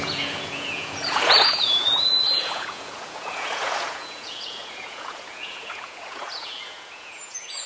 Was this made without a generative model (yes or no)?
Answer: no